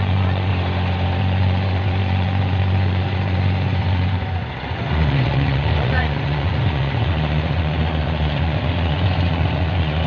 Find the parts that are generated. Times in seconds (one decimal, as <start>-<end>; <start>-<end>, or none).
0.0-0.5; 1.2-10.1